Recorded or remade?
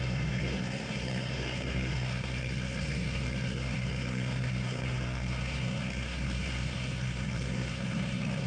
remade